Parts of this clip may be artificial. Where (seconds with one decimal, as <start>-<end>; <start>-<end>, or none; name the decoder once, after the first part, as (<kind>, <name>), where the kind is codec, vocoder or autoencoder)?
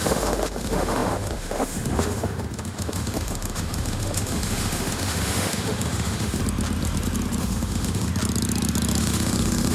0.0-6.4 (autoencoder, DAC-VAE); 7.4-8.1; 9.0-9.7